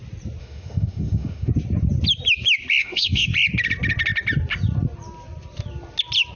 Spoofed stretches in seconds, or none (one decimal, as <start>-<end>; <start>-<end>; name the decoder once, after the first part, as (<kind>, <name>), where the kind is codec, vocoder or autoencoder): 0.4-1.5 (autoencoder, DAC-VAE); 2.8-3.3